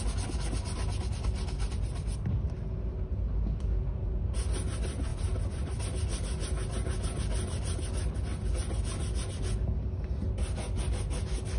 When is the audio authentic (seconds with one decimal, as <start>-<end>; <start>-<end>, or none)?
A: 0.0-11.6